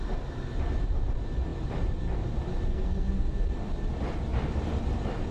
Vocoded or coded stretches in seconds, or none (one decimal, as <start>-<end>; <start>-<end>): 2.7-3.2